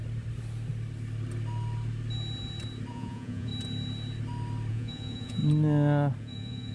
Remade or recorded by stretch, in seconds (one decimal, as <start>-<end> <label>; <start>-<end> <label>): 0.0-2.9 recorded; 2.9-3.5 remade; 3.5-4.7 recorded; 4.7-5.4 remade; 5.4-6.2 recorded; 6.2-6.7 remade